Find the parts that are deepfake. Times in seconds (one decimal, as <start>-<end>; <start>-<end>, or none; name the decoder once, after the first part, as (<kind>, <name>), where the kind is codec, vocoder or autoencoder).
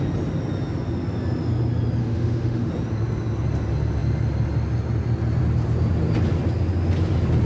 2.0-2.7 (autoencoder, DAC-VAE)